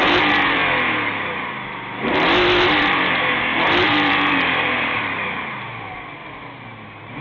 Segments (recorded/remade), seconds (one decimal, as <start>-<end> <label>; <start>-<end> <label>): 0.0-0.6 remade; 0.6-2.8 recorded; 2.8-6.2 remade; 6.2-7.2 recorded